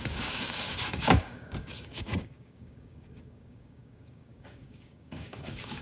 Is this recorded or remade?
remade